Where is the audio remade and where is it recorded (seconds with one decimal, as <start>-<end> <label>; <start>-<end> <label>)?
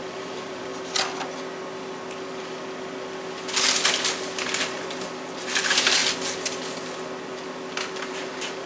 0.0-0.7 remade; 0.7-5.4 recorded; 5.4-6.0 remade; 6.0-8.1 recorded; 8.1-8.7 remade